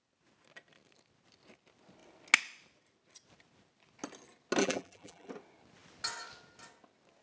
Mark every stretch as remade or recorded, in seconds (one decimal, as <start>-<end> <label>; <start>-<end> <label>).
0.0-4.6 recorded; 4.6-5.3 remade; 5.3-7.2 recorded